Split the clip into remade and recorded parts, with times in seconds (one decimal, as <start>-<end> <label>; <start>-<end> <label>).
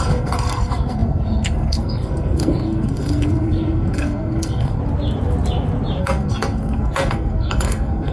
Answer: 0.0-4.8 remade; 4.8-6.0 recorded; 6.0-8.1 remade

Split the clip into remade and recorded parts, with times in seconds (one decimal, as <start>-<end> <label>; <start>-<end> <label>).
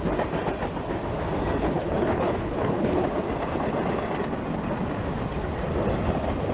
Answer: 0.0-1.6 recorded; 1.6-3.1 remade; 3.1-6.5 recorded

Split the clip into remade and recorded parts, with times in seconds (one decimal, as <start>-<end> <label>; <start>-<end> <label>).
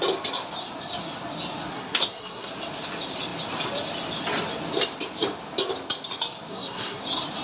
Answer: 0.0-1.7 recorded; 1.7-2.5 remade; 2.5-6.5 recorded; 6.5-7.0 remade; 7.0-7.4 recorded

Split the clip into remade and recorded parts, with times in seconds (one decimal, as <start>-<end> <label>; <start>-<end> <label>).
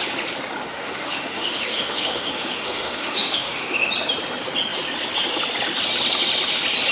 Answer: 0.0-0.6 recorded; 0.6-3.9 remade; 3.9-6.9 recorded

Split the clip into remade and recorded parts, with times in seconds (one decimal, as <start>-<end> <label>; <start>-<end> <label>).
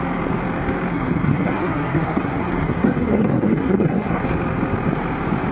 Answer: 0.0-0.9 recorded; 0.9-4.2 remade; 4.2-5.5 recorded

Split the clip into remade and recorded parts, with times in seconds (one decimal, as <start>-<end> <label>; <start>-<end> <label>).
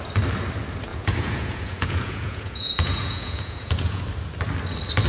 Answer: 0.0-0.9 recorded; 0.9-4.0 remade; 4.0-5.1 recorded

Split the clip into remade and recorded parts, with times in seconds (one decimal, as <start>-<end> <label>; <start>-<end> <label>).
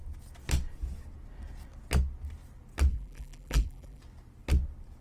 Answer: 0.0-2.9 recorded; 2.9-4.0 remade; 4.0-5.0 recorded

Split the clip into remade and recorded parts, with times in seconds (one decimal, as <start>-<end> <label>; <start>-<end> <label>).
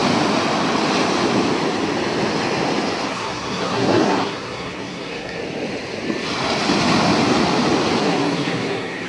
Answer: 0.0-3.1 recorded; 3.1-5.4 remade; 5.4-8.0 recorded; 8.0-9.1 remade